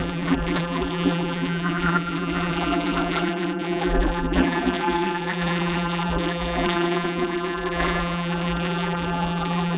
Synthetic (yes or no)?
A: yes